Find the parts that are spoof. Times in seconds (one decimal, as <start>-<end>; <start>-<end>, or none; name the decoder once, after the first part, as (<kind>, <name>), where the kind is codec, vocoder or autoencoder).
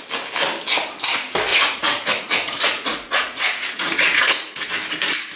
1.5-4.7 (vocoder, Vocos)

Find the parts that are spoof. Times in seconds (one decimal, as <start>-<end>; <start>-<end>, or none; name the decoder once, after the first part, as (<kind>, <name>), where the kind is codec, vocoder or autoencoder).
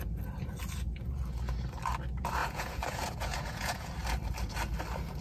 2.4-3.9 (vocoder, Vocos)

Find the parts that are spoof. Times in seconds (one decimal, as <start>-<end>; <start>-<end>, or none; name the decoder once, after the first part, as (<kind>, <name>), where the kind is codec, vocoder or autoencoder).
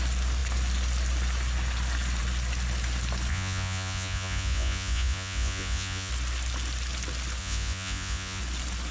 3.3-6.1 (vocoder, Vocos); 7.4-8.4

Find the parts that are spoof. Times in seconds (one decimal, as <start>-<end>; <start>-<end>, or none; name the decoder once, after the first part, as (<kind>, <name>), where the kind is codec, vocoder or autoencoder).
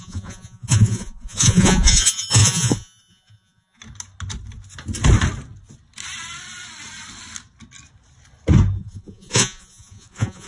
0.0-3.8 (vocoder, Vocos); 8.8-10.5